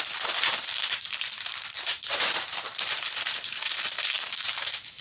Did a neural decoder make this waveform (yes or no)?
yes